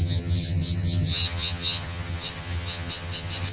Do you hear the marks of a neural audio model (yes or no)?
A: yes